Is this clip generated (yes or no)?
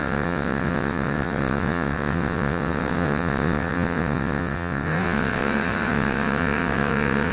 yes